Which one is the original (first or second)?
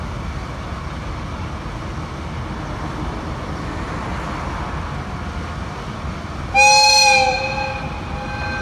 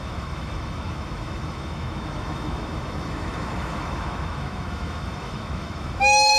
first